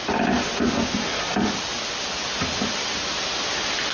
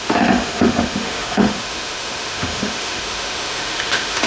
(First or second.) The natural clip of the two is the first